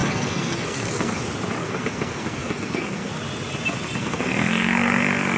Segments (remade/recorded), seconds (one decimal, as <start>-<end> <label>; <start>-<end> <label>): 0.0-1.2 remade; 1.2-1.6 recorded; 1.6-3.2 remade; 3.2-4.0 recorded; 4.0-5.4 remade